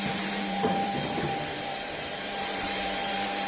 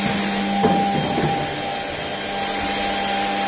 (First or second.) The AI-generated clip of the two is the first